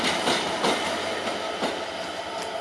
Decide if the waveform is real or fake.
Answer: real